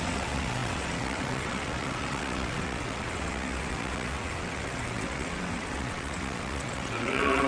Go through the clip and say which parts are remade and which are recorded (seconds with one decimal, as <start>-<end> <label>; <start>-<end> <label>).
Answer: 0.0-7.5 remade